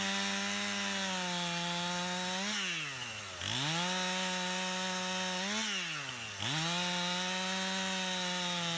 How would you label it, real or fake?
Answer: real